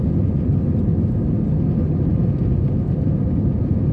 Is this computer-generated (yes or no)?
no